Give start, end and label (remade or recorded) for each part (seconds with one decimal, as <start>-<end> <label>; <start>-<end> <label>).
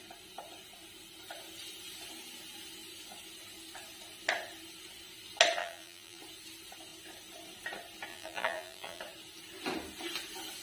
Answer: 0.0-5.6 recorded; 5.6-6.2 remade; 6.2-8.1 recorded; 8.1-9.0 remade; 9.0-10.6 recorded